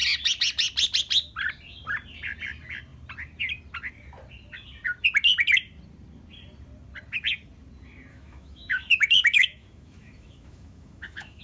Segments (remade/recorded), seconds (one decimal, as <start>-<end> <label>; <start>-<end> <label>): 0.0-8.1 recorded; 8.1-11.4 remade